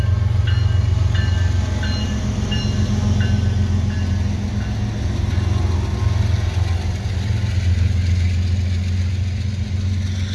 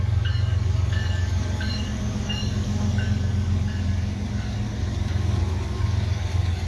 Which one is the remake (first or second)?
second